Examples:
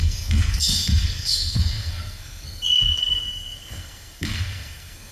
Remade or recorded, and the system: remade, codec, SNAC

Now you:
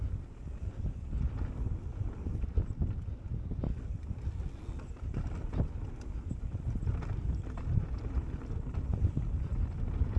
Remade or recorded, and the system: recorded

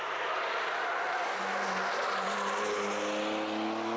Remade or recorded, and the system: recorded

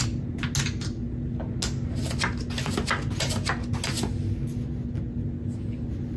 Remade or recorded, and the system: recorded